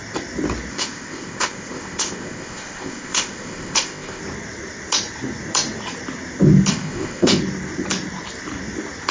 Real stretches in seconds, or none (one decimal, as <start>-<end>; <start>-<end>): 0.0-0.7; 4.2-6.7; 7.4-9.1